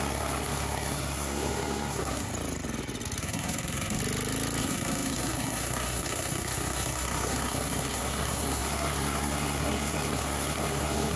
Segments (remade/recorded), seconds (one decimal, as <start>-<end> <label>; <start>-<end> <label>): 0.0-2.3 remade; 2.3-3.2 recorded; 3.2-4.0 remade; 4.0-4.6 recorded; 4.6-11.2 remade